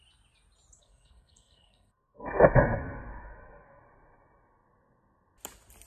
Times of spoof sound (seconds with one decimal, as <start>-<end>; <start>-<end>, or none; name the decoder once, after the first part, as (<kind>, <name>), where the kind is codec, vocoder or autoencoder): 0.8-3.8 (codec, SNAC)